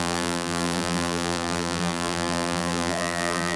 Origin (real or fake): fake